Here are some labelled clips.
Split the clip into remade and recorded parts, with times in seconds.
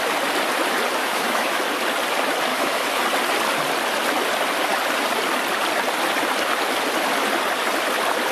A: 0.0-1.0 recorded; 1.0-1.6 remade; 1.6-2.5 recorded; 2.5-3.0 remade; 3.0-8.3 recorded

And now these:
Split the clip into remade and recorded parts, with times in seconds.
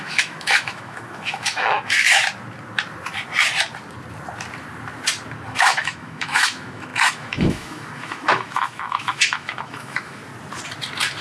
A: 0.0-2.2 remade; 2.2-5.5 recorded; 5.5-10.2 remade; 10.2-11.2 recorded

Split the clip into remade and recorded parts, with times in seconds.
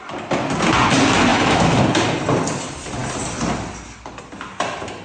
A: 0.0-1.3 recorded; 1.3-1.8 remade; 1.8-5.0 recorded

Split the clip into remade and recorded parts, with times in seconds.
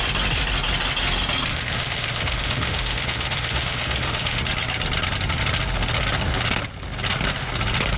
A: 0.0-1.5 recorded; 1.5-4.4 remade; 4.4-8.0 recorded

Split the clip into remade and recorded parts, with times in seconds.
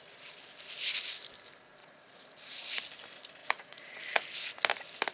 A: 0.0-1.8 recorded; 1.8-2.8 remade; 2.8-3.4 recorded; 3.4-4.0 remade; 4.0-5.1 recorded